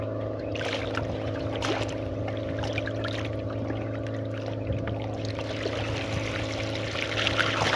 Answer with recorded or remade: recorded